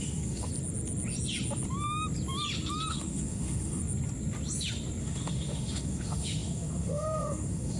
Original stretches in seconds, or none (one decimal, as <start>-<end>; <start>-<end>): 0.5-2.9; 3.8-5.0